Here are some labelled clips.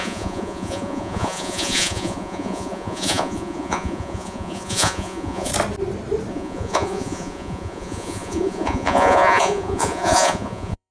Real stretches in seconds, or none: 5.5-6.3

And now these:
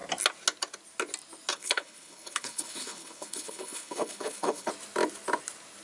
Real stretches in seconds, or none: 0.0-1.5; 4.7-5.8

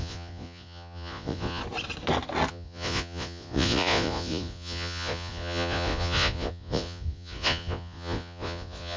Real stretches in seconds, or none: 1.6-2.5

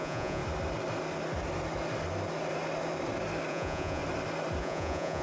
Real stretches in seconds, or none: 0.4-3.5; 4.0-4.6

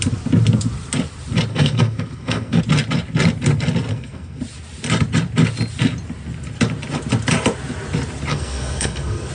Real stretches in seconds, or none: 0.0-1.5; 2.6-3.9; 4.4-8.3